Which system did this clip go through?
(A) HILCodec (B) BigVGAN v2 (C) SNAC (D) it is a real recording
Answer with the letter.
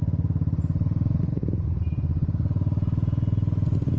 D